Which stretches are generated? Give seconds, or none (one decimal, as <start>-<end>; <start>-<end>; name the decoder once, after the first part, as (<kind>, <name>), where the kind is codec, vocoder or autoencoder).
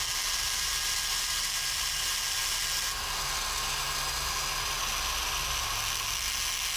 none